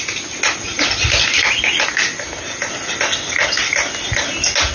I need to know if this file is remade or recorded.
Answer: recorded